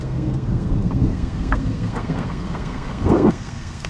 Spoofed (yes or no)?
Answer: yes